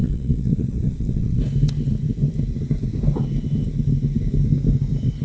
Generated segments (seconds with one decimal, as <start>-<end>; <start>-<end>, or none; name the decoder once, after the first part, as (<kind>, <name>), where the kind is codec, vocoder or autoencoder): 0.0-1.4 (vocoder, Vocos)